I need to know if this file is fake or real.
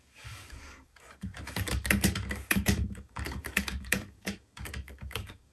fake